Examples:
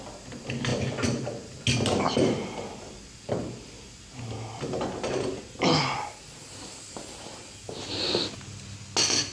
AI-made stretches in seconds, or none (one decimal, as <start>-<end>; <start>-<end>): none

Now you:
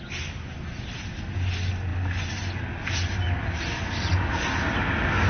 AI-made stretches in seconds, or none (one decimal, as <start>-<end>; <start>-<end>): none

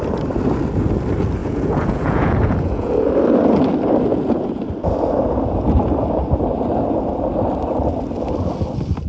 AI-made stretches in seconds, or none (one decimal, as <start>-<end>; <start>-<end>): 1.4-2.9; 4.1-4.6